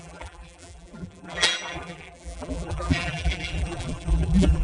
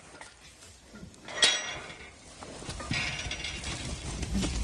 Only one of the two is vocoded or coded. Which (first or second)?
first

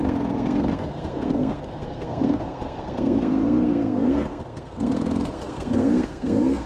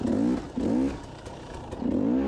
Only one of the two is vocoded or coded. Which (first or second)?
first